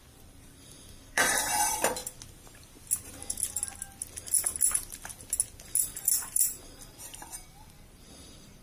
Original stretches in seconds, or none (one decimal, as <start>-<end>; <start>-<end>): 2.0-5.8